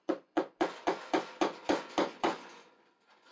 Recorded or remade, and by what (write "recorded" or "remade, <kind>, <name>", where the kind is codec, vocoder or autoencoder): remade, vocoder, Vocos